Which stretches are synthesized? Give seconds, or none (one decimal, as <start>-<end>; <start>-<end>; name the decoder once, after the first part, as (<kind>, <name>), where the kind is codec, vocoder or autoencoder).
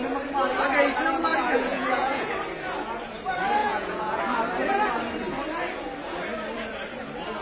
1.3-2.3 (vocoder, Vocos); 3.6-4.2